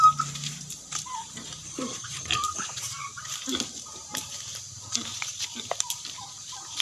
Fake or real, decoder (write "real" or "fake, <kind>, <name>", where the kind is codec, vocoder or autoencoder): fake, vocoder, BigVGAN v2